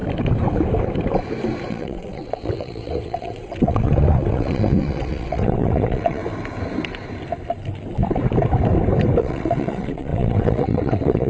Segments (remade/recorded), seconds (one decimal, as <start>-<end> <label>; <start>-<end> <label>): 0.0-1.7 recorded; 1.7-6.2 remade; 6.2-9.2 recorded; 9.2-11.3 remade